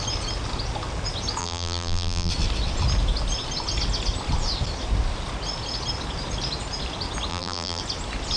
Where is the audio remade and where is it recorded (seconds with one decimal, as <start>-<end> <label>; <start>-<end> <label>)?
0.0-1.4 recorded; 1.4-2.3 remade; 2.3-7.3 recorded; 7.3-7.8 remade; 7.8-8.4 recorded